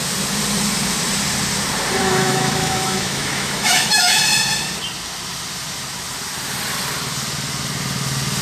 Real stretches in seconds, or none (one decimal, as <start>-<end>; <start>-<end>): 0.0-2.0; 4.2-8.4